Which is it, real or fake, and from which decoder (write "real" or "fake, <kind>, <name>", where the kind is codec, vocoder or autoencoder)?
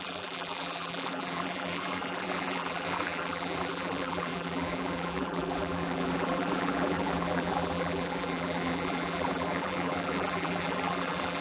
fake, vocoder, BigVGAN v2